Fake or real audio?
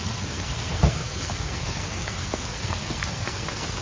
fake